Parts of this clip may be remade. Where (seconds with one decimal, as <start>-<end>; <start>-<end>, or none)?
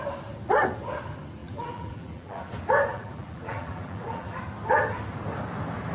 1.4-2.5; 2.9-4.4